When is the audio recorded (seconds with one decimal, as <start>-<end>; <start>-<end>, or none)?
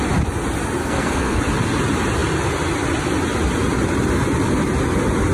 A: 0.0-0.8; 1.4-5.3